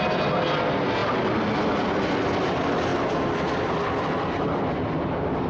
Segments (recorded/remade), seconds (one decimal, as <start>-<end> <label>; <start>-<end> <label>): 0.0-1.0 recorded; 1.0-1.9 remade; 1.9-2.9 recorded; 2.9-5.1 remade; 5.1-5.5 recorded